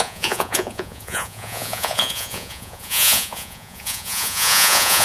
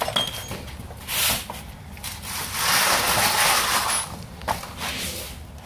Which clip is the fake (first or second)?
first